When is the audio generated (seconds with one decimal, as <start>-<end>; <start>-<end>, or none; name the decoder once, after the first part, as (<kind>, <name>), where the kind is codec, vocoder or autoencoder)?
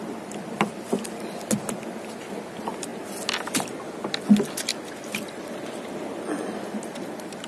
none